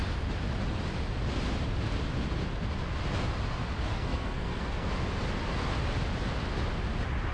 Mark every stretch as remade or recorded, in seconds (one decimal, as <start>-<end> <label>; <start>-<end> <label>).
0.0-3.9 recorded; 3.9-4.9 remade; 4.9-7.3 recorded